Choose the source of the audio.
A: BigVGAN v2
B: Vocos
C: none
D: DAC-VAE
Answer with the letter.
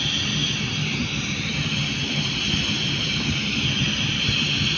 C